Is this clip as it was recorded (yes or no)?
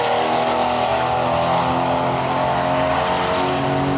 yes